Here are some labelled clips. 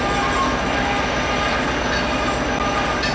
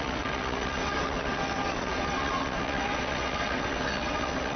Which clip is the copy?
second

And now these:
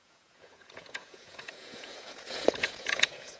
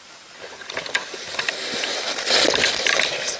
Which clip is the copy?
first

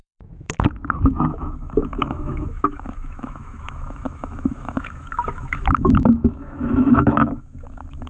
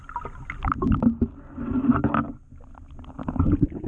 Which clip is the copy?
first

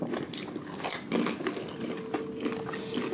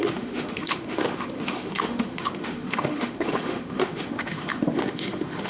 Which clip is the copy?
second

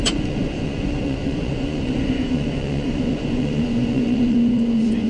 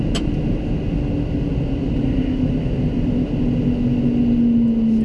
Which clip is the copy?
first